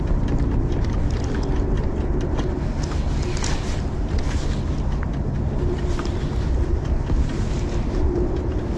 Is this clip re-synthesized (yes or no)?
no